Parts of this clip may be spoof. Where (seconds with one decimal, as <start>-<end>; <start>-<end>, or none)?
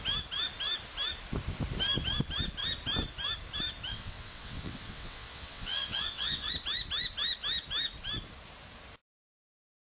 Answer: 3.9-6.5